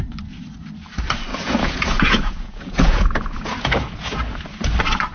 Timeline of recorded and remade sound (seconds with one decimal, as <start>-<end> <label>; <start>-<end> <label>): 0.0-1.3 recorded; 1.3-4.2 remade; 4.2-5.1 recorded